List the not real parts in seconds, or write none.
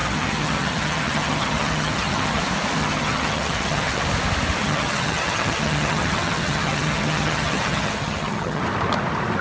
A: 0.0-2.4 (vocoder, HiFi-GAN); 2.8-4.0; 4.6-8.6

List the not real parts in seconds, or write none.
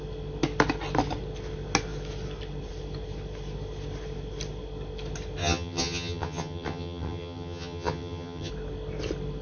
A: 5.4-8.5 (vocoder, HiFi-GAN)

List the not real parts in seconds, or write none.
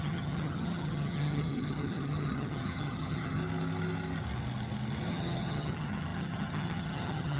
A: 0.0-3.4 (vocoder, HiFi-GAN); 5.1-7.4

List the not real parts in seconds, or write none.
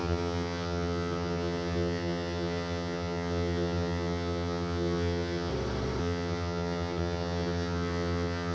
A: 0.0-5.5 (vocoder, HiFi-GAN); 6.0-8.5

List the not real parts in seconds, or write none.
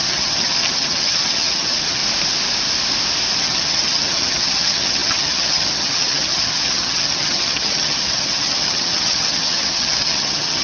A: 0.0-2.0 (vocoder, HiFi-GAN); 3.4-10.6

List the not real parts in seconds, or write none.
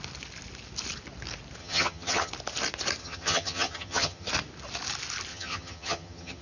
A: 1.6-2.3 (vocoder, HiFi-GAN); 3.0-4.3; 5.3-6.4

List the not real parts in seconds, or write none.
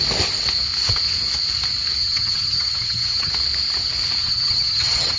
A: 2.0-3.3 (vocoder, HiFi-GAN); 4.2-5.2